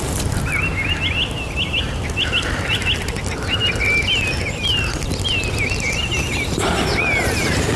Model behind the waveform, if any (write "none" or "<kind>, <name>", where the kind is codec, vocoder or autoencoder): none